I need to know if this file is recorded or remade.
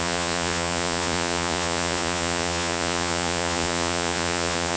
remade